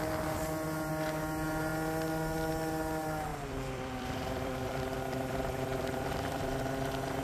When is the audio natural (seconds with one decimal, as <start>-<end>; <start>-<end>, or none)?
0.0-3.3; 6.6-7.2